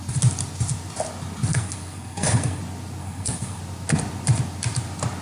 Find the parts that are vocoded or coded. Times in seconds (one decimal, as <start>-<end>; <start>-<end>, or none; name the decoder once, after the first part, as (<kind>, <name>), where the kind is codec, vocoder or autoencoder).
1.5-2.6 (codec, SNAC); 3.0-3.6